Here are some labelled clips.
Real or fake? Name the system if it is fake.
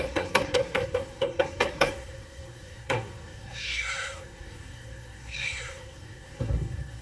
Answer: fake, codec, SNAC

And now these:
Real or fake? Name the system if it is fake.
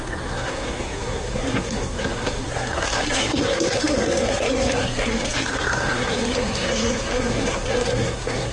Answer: fake, codec, SNAC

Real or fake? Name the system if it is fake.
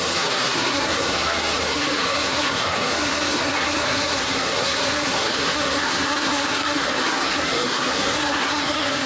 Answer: fake, codec, SNAC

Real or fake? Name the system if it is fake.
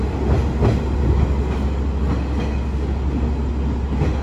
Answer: real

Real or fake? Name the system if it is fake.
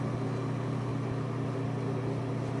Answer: real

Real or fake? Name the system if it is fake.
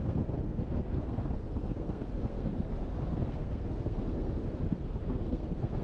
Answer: fake, codec, SNAC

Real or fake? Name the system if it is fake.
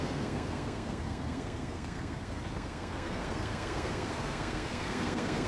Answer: fake, codec, SNAC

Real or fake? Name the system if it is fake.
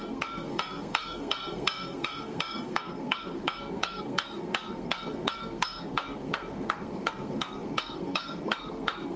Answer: fake, codec, SNAC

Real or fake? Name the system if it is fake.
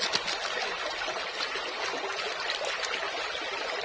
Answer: real